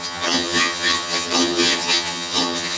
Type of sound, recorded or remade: remade